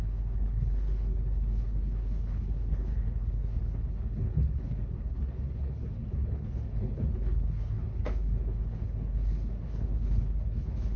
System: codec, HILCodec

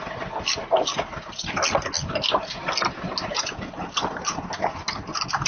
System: none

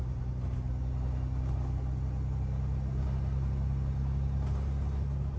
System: none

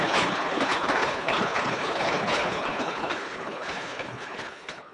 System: codec, HILCodec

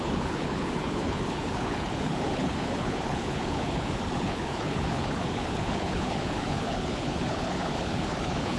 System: codec, HILCodec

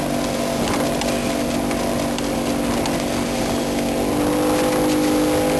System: none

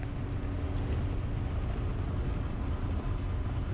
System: none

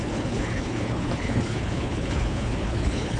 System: codec, HILCodec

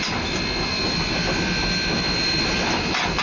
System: none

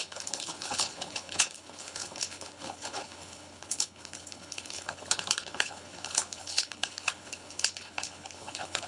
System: codec, HILCodec